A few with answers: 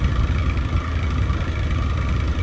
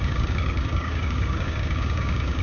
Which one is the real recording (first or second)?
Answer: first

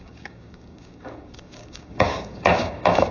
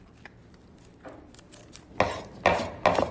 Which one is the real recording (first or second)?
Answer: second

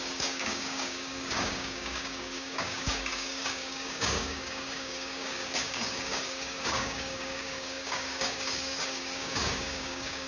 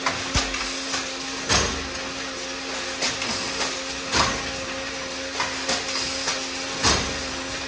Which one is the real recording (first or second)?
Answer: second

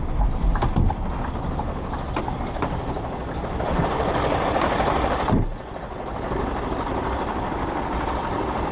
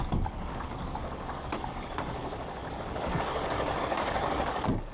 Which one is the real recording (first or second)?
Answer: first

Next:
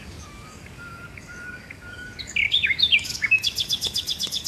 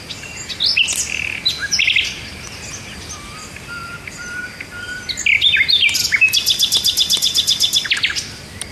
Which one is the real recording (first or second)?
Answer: second